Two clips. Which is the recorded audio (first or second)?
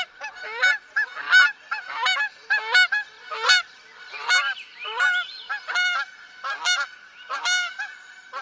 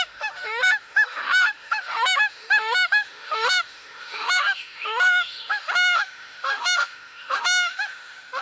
first